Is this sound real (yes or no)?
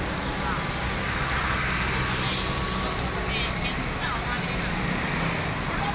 yes